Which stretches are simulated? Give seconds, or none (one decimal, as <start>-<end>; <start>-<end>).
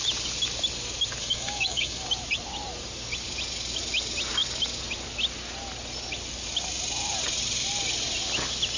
1.2-2.0